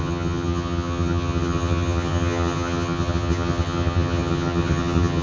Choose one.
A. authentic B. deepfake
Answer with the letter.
B